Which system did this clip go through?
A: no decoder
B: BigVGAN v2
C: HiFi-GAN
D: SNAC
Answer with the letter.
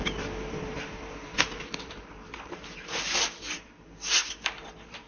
B